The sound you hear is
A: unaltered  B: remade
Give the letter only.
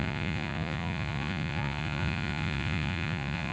B